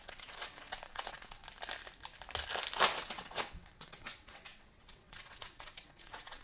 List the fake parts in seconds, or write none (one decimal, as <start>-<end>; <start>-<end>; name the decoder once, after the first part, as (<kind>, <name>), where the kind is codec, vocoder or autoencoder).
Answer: 0.0-1.4 (vocoder, WaveNeXt); 3.0-6.4